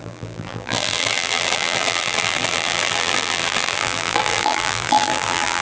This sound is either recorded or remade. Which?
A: remade